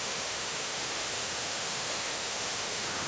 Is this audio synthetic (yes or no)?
yes